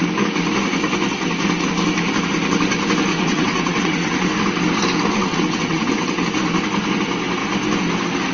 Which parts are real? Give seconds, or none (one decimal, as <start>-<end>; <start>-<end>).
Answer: 0.0-3.1; 4.3-5.2; 6.2-8.3